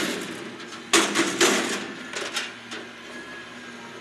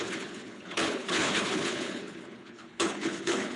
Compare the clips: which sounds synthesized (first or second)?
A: second